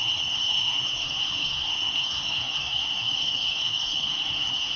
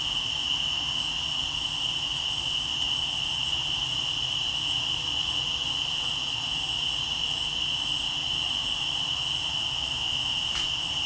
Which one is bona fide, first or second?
second